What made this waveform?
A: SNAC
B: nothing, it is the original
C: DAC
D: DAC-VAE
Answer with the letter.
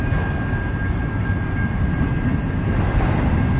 B